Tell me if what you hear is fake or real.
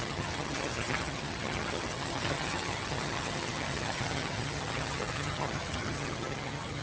fake